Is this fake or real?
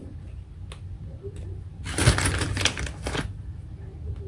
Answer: real